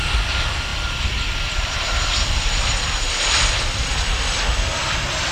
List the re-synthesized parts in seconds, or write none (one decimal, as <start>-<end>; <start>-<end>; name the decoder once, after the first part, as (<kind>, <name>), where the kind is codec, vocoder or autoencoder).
0.7-3.9 (vocoder, BigVGAN v2)